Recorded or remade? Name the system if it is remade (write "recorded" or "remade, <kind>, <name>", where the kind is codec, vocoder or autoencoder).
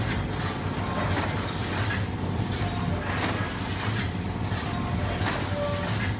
recorded